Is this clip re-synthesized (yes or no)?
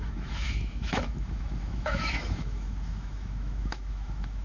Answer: yes